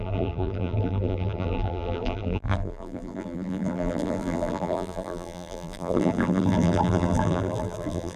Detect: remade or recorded remade